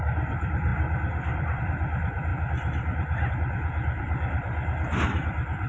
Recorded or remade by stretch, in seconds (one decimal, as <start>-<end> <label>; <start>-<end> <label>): 0.0-5.7 remade